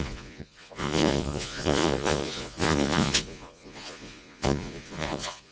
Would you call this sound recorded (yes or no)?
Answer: no